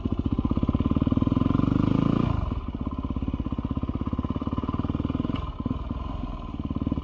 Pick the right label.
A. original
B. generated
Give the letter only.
A